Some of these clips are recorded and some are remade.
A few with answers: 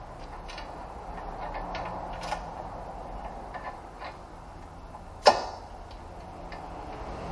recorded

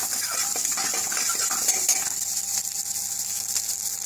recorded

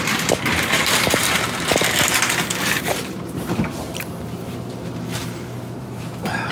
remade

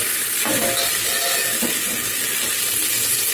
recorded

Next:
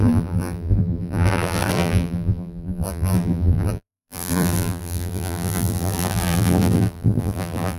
remade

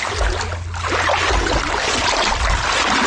recorded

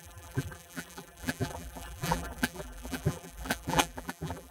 remade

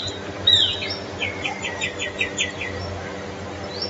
recorded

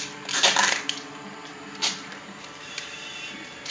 remade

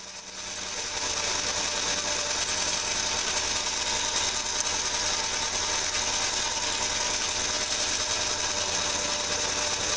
recorded